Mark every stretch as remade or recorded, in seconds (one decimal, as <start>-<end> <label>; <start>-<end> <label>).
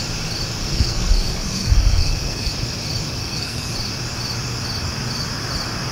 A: 0.0-0.6 recorded; 0.6-2.5 remade; 2.5-3.2 recorded; 3.2-3.7 remade; 3.7-5.9 recorded